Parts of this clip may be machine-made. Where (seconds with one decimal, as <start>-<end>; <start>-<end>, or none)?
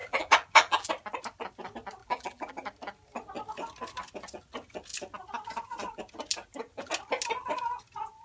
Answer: 0.0-0.9; 2.0-2.5